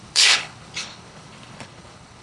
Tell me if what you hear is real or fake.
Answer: fake